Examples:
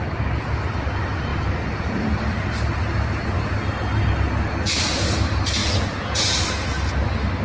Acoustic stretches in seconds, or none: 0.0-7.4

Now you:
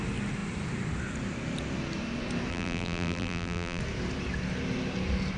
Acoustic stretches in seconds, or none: 0.0-2.5; 3.8-5.4

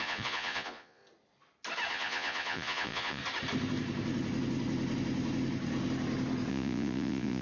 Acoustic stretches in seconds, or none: 1.0-1.9; 3.2-6.5

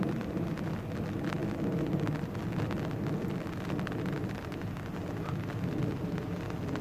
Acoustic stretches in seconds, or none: 0.0-6.8